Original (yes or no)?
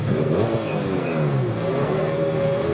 no